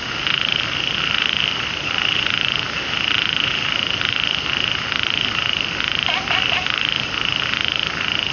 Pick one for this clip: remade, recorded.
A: recorded